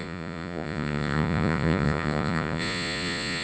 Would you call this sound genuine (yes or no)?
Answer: no